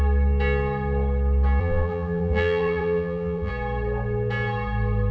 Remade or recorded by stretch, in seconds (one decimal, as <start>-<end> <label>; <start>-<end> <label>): 0.0-1.6 recorded; 1.6-3.5 remade; 3.5-5.1 recorded